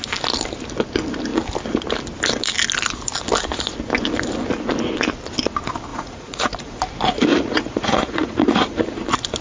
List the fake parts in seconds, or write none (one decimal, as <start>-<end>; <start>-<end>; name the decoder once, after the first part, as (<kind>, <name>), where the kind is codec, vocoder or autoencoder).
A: 5.9-6.8 (vocoder, Vocos); 7.3-8.8